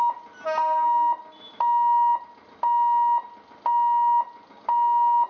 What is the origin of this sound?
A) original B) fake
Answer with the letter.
A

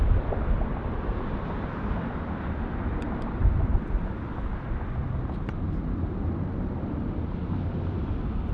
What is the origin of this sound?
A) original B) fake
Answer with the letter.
A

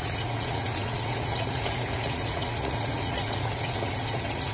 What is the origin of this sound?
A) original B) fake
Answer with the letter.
B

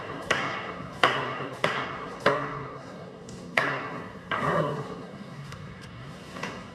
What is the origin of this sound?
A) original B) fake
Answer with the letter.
B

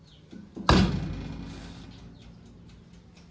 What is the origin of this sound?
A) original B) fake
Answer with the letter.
A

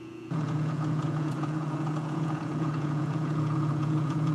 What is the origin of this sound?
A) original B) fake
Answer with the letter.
B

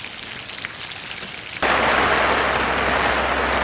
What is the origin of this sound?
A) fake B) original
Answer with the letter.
B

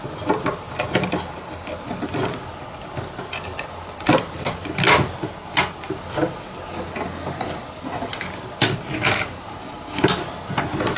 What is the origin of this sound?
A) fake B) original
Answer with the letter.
B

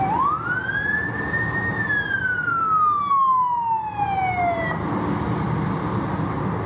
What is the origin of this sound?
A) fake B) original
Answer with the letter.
B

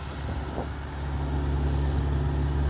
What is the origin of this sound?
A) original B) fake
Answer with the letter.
A